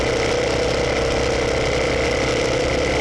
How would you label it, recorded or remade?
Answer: recorded